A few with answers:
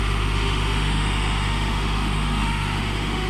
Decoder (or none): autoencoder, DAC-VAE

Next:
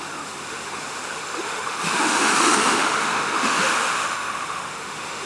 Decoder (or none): autoencoder, DAC-VAE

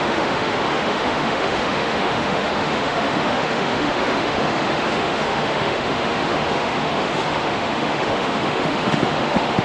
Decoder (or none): autoencoder, DAC-VAE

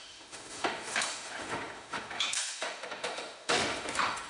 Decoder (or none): autoencoder, DAC-VAE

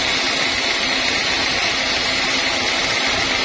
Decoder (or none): none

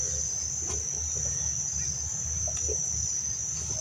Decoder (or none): none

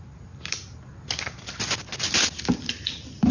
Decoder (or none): none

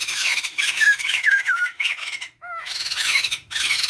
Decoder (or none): autoencoder, DAC-VAE